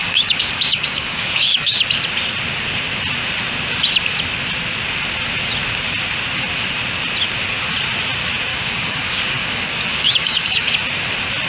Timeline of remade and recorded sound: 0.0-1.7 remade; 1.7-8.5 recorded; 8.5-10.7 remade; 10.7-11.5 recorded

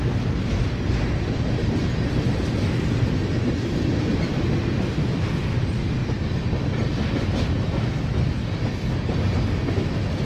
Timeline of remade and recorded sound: 0.0-6.0 recorded; 6.0-7.2 remade; 7.2-10.3 recorded

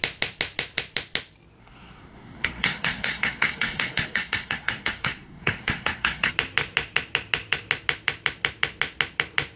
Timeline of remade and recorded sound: 0.0-1.6 recorded; 1.6-6.3 remade; 6.3-9.6 recorded

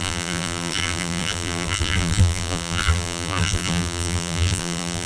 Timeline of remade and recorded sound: 0.0-5.1 remade